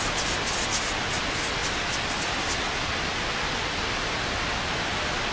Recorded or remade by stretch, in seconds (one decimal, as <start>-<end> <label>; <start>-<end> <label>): 0.0-5.3 recorded